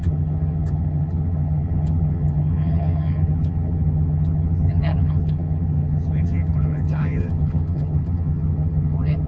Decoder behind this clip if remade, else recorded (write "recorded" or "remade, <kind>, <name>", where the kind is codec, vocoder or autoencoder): remade, vocoder, HiFi-GAN